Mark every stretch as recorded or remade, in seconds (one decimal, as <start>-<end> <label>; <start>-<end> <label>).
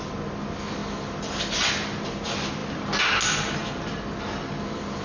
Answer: 0.0-5.0 recorded